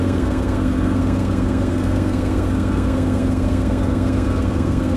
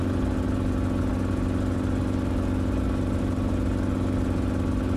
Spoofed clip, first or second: first